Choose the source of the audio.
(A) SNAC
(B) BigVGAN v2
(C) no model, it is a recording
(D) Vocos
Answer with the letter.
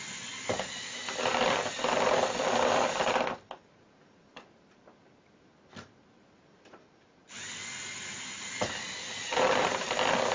C